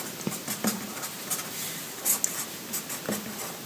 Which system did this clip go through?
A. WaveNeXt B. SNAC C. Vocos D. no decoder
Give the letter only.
D